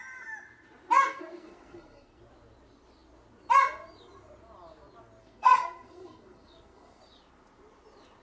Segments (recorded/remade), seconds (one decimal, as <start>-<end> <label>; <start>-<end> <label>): 0.0-1.1 recorded; 1.1-2.2 remade; 2.2-5.2 recorded; 5.2-7.0 remade; 7.0-8.2 recorded